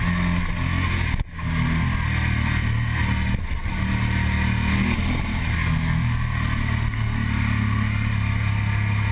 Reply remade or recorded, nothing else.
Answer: recorded